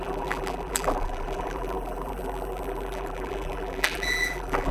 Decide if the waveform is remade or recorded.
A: remade